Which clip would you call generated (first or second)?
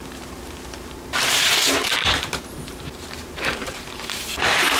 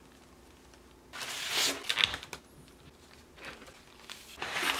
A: first